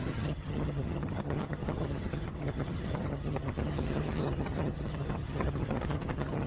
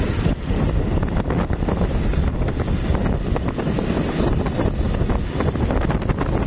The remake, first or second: first